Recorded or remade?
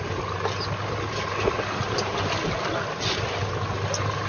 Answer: recorded